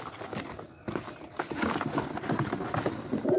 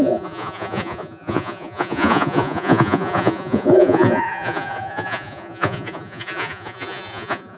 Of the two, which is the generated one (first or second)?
second